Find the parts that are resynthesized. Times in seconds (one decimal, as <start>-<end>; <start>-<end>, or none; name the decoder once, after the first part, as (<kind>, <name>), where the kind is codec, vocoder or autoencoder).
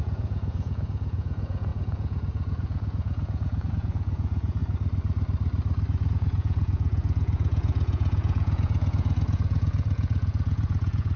0.0-4.6 (vocoder, Vocos); 6.1-11.2